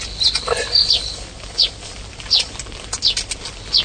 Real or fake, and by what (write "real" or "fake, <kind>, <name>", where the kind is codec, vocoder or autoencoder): real